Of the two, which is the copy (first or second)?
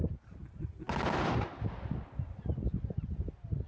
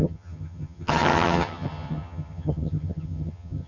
second